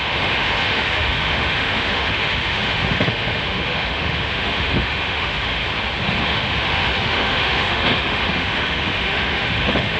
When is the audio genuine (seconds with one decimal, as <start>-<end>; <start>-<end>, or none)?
5.6-6.2